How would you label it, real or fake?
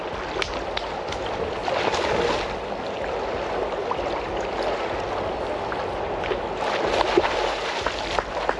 real